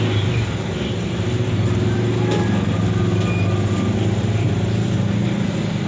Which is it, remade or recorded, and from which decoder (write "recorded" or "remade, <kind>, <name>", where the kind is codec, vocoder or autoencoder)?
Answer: recorded